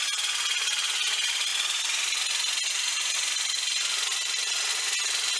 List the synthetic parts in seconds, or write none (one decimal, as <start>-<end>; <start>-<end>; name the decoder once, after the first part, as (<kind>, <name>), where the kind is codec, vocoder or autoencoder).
none